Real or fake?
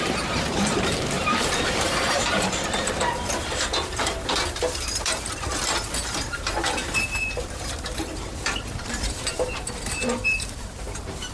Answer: fake